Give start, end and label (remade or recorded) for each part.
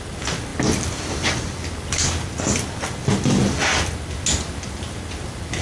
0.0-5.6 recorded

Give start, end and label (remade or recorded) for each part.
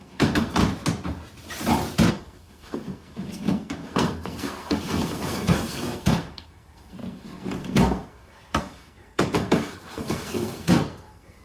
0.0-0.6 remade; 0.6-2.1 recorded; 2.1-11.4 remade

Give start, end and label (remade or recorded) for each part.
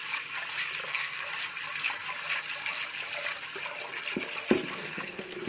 0.0-0.8 recorded; 0.8-1.3 remade; 1.3-4.8 recorded; 4.8-5.5 remade